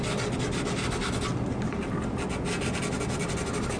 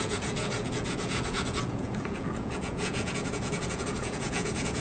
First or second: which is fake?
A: second